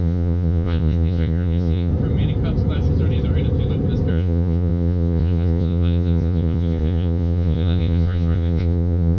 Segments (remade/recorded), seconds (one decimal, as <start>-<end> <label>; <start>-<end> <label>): 0.0-1.9 remade; 1.9-4.1 recorded; 4.1-9.2 remade